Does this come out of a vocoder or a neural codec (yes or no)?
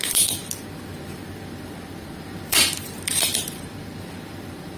yes